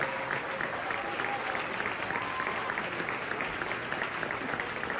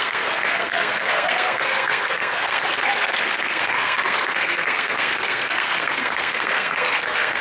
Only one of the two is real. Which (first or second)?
first